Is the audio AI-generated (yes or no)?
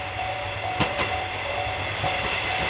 yes